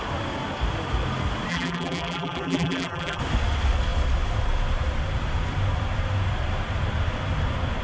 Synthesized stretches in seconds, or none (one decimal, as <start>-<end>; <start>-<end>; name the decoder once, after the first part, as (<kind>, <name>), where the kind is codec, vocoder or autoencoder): 1.5-3.2 (vocoder, BigVGAN v2)